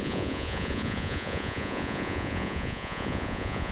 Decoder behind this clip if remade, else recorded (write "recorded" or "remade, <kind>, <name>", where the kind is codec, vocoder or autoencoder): remade, vocoder, Vocos